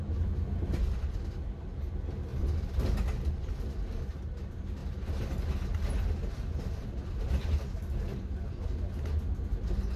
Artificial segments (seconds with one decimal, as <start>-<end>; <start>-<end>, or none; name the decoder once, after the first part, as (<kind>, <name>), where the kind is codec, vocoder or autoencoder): none